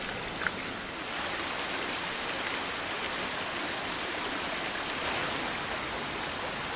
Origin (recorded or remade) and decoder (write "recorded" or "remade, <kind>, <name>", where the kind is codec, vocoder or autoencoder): recorded